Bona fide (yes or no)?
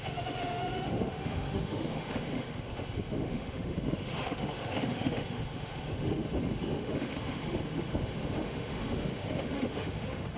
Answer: no